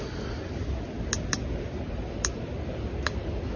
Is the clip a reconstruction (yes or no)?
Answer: no